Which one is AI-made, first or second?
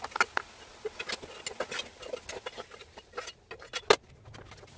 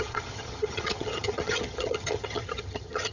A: second